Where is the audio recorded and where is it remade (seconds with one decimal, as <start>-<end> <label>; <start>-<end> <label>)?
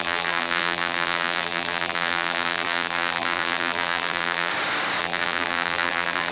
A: 0.0-4.5 remade; 4.5-5.0 recorded; 5.0-6.3 remade